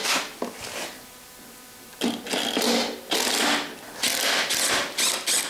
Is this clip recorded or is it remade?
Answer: recorded